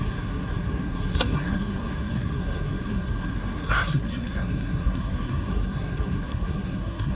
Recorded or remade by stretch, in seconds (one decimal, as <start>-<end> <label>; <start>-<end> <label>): 0.0-7.1 remade

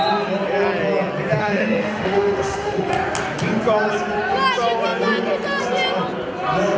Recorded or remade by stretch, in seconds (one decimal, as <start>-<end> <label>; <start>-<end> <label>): 0.0-1.4 recorded; 1.4-2.9 remade; 2.9-6.8 recorded

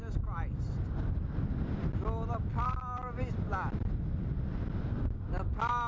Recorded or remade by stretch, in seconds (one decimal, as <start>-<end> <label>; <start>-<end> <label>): 0.0-5.9 recorded

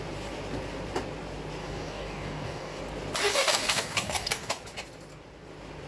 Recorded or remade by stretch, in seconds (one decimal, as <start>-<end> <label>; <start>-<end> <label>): 0.0-1.6 recorded; 1.6-2.8 remade; 2.8-3.3 recorded; 3.3-4.6 remade; 4.6-5.9 recorded

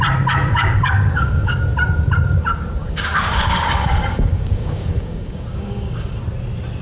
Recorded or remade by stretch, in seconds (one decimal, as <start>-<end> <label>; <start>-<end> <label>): 0.0-0.4 recorded; 0.4-1.6 remade; 1.6-2.8 recorded; 2.8-6.1 remade; 6.1-6.8 recorded

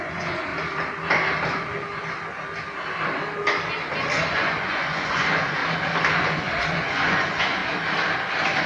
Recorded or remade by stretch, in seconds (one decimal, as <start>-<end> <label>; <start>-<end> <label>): 0.0-0.5 remade; 0.5-4.3 recorded; 4.3-5.6 remade; 5.6-6.1 recorded; 6.1-7.6 remade; 7.6-8.7 recorded